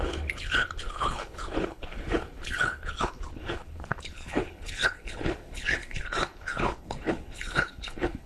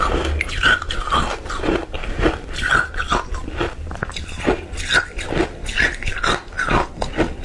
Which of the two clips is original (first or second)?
second